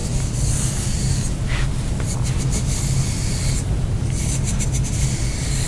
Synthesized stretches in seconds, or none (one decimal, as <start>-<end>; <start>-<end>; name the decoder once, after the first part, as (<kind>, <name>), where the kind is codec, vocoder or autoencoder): none